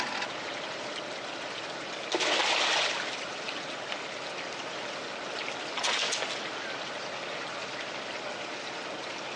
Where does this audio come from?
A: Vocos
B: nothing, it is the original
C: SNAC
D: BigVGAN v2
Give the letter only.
B